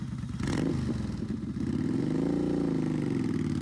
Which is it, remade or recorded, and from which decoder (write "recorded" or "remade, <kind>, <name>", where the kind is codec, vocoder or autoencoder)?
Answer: recorded